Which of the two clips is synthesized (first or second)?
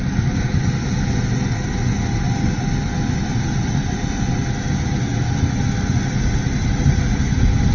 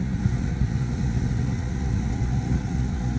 second